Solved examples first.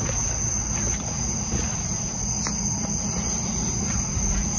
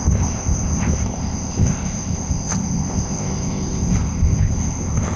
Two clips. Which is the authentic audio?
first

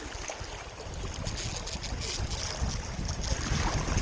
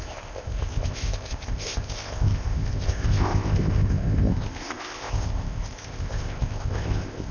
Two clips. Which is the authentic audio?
first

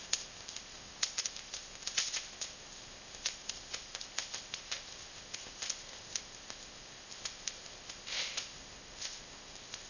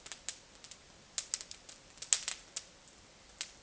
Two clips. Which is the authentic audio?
second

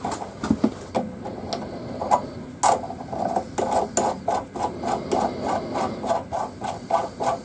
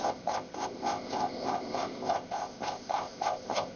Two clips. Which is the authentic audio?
first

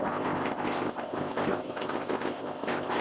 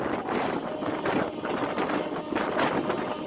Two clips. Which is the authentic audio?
second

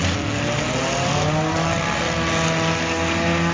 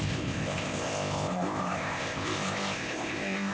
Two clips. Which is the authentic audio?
first